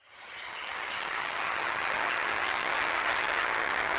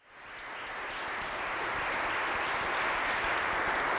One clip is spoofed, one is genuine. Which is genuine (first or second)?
second